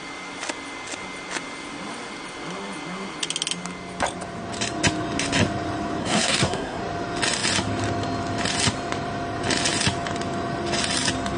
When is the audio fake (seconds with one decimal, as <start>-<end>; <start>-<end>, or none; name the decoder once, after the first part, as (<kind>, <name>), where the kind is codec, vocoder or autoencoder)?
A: 6.0-6.8 (codec, SNAC)